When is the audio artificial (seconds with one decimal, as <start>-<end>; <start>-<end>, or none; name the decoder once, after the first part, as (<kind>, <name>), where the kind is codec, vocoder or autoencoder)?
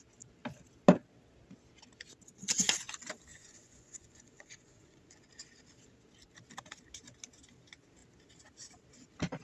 3.3-5.3 (vocoder, Vocos)